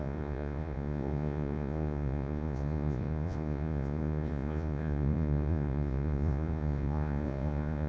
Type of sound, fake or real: fake